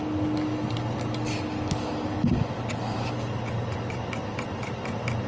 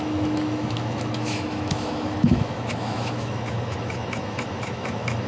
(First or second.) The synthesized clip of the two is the second